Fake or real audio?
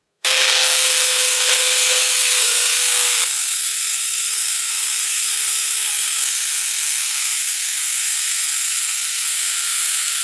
fake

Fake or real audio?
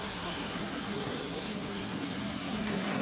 fake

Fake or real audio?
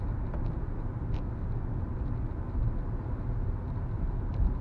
real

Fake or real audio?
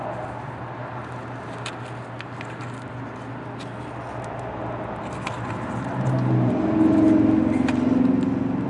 real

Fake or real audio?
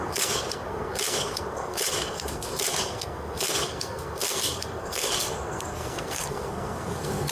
fake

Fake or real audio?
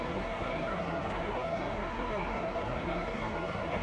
fake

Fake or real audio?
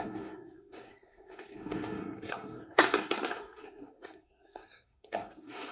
fake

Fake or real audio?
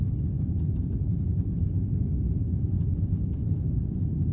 real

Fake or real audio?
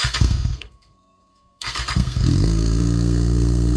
fake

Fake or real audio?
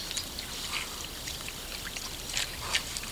real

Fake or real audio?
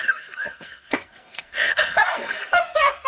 fake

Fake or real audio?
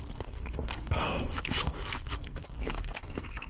fake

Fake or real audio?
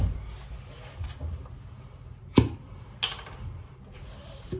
real